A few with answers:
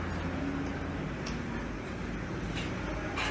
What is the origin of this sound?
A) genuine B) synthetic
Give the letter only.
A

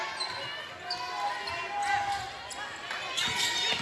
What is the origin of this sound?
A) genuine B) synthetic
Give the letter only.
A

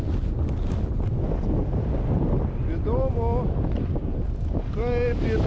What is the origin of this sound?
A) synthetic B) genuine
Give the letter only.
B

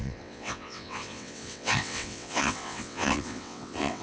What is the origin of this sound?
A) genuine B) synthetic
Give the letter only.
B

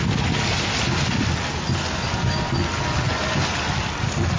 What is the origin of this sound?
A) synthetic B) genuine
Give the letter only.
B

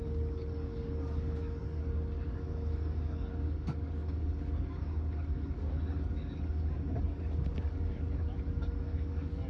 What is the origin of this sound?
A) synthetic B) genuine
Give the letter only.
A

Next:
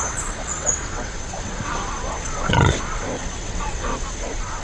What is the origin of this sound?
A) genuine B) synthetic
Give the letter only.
B